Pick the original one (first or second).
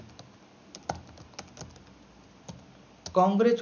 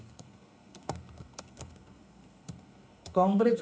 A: first